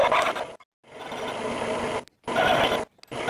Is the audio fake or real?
real